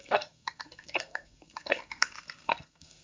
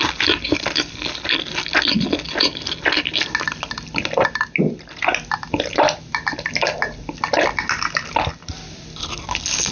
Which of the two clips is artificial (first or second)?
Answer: first